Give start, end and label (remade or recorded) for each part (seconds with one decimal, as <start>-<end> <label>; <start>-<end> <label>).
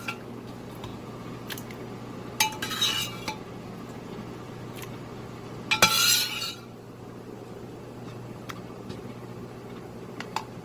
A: 0.0-10.6 recorded